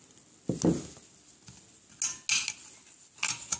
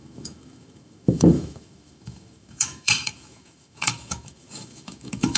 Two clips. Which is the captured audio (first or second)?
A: first